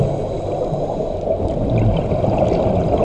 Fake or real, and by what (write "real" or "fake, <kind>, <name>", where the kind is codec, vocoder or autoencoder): real